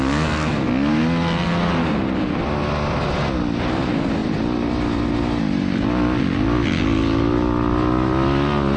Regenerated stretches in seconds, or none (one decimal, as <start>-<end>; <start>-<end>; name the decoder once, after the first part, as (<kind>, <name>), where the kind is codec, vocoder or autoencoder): none